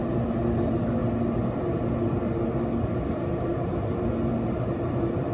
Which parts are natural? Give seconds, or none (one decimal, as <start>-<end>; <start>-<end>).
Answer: 0.0-5.3